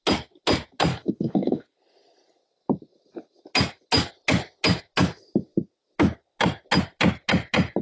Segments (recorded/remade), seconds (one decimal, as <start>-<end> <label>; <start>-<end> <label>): 0.0-0.9 recorded; 0.9-1.7 remade; 1.7-7.8 recorded